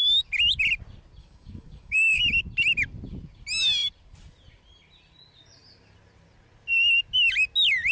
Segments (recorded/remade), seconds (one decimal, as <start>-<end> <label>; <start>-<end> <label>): 0.0-1.2 recorded; 1.2-2.2 remade; 2.2-7.9 recorded